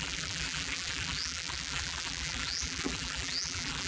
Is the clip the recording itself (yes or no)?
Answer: no